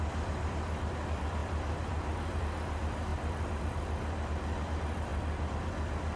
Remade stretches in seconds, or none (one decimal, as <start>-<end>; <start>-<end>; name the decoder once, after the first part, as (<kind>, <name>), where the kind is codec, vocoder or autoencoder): none